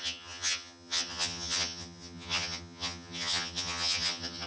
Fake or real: fake